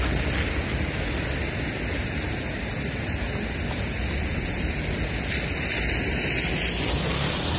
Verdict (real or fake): real